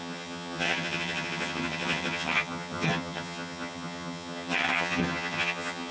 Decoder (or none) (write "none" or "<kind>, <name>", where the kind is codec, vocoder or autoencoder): vocoder, HiFi-GAN